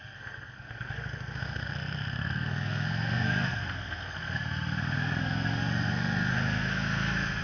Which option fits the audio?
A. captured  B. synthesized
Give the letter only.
B